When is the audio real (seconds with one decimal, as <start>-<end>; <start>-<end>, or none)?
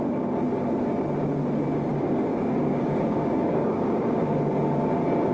0.0-1.9; 4.2-5.3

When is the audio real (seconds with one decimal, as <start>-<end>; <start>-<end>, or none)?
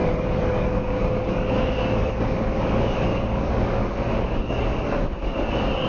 none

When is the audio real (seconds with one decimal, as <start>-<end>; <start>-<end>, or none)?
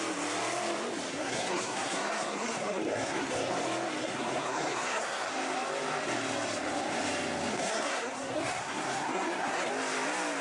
0.0-1.1; 3.5-4.0; 5.3-7.5; 9.7-10.4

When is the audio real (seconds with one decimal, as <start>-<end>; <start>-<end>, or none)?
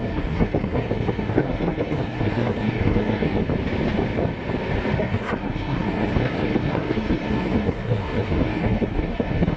3.4-5.0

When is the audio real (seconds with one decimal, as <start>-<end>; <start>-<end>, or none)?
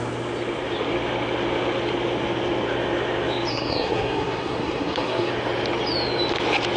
0.0-3.5; 5.3-6.8